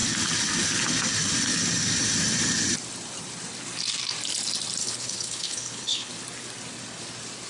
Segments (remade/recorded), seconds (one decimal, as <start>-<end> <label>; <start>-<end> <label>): 0.0-4.8 recorded; 4.8-6.1 remade; 6.1-7.5 recorded